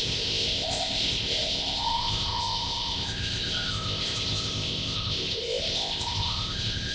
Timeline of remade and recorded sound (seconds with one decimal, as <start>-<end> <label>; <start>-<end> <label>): 0.0-6.9 remade